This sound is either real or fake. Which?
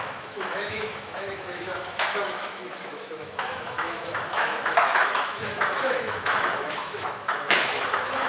fake